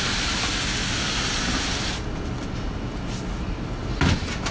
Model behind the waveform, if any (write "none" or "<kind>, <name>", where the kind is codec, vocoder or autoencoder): none